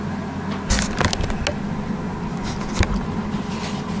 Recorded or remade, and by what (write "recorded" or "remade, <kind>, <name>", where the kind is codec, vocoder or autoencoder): recorded